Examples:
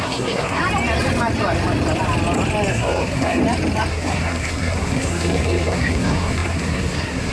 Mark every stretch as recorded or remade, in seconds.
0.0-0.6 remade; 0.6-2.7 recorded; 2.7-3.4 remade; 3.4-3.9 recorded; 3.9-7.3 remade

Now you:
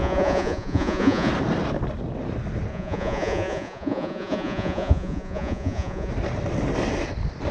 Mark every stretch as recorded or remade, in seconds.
0.0-1.3 remade; 1.3-2.7 recorded; 2.7-6.1 remade; 6.1-7.5 recorded

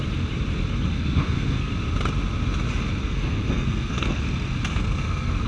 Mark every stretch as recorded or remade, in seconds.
0.0-0.9 recorded; 0.9-1.7 remade; 1.7-3.0 recorded; 3.0-4.2 remade; 4.2-4.7 recorded; 4.7-5.5 remade

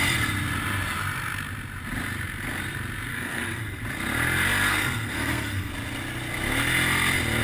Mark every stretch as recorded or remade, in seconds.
0.0-3.1 recorded; 3.1-3.8 remade; 3.8-4.7 recorded; 4.7-5.7 remade; 5.7-7.4 recorded

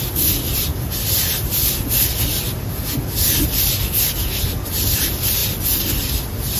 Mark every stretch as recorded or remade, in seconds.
0.0-6.6 recorded

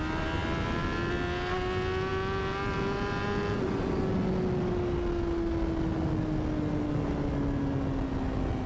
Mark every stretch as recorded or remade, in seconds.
0.0-8.7 recorded

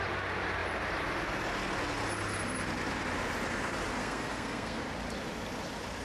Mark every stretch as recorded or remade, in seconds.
0.0-4.0 recorded; 4.0-4.8 remade; 4.8-6.0 recorded